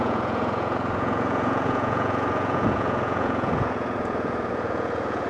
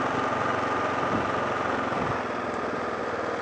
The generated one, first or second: first